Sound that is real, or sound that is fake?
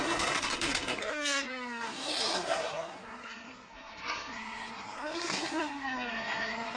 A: fake